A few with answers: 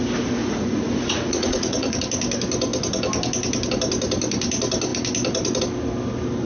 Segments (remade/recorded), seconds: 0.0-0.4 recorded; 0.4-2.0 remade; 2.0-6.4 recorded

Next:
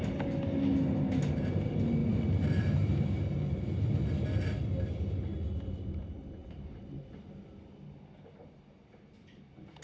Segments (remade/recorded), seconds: 0.0-2.0 recorded; 2.0-3.6 remade; 3.6-9.8 recorded

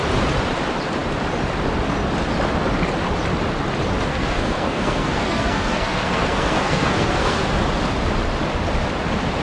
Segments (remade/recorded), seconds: 0.0-4.1 recorded; 4.1-7.5 remade; 7.5-9.4 recorded

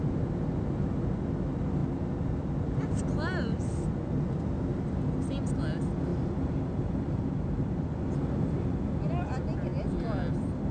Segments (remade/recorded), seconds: 0.0-10.7 recorded

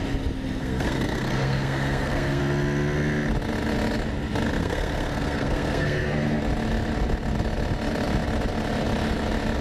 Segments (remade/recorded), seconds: 0.0-0.6 recorded; 0.6-2.4 remade; 2.4-4.6 recorded; 4.6-6.4 remade; 6.4-9.6 recorded

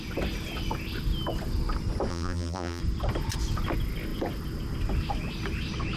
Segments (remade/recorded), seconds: 0.0-2.1 recorded; 2.1-2.8 remade; 2.8-6.0 recorded

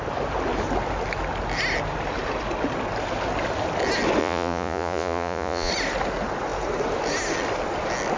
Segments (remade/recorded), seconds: 0.0-4.2 recorded; 4.2-5.7 remade; 5.7-8.2 recorded

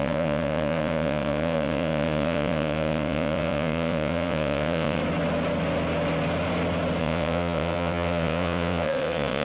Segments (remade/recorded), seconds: 0.0-5.0 remade; 5.0-7.0 recorded; 7.0-9.4 remade